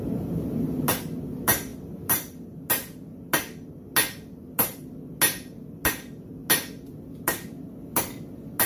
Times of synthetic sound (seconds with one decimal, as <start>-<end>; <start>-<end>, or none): none